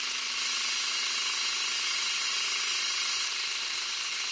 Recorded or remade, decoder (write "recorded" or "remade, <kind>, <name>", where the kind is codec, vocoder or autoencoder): recorded